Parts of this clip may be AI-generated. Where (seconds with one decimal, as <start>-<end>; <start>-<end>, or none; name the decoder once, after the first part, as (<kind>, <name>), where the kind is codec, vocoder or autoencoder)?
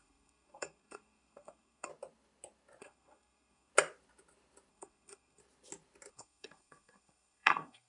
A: 0.0-1.9 (codec, SNAC); 2.8-3.7; 4.7-5.4; 6.1-7.9